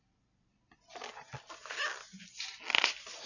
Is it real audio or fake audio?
real